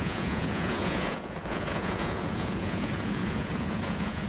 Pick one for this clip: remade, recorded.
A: remade